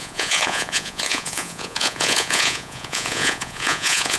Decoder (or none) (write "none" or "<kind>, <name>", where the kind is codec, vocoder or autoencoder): vocoder, Vocos